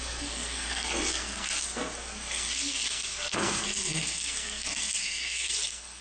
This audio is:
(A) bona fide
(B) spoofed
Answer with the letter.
B